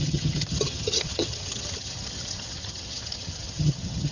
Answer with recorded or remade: remade